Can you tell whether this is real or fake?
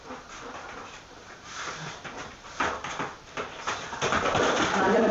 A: fake